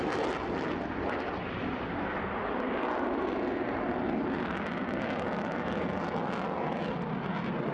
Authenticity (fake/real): real